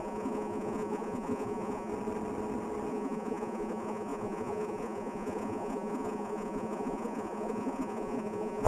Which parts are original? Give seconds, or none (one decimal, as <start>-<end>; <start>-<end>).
1.9-2.9